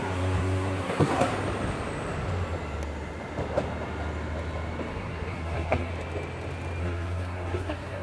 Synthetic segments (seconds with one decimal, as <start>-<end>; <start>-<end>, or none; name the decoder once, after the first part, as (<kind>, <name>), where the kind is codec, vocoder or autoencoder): 0.0-1.3 (codec, SNAC); 4.9-5.9; 6.8-8.0